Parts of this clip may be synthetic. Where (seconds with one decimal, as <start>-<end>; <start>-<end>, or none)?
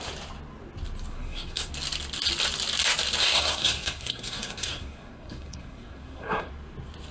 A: 1.1-1.7; 3.2-6.5